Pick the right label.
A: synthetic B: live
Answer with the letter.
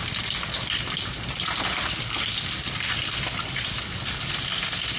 B